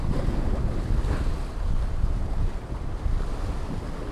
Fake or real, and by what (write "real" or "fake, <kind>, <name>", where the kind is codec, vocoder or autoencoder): real